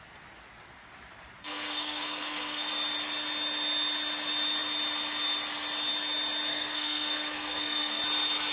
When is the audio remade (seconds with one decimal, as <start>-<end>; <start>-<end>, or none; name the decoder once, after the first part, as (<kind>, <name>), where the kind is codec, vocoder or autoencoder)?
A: 1.4-2.7 (codec, SNAC); 6.5-8.0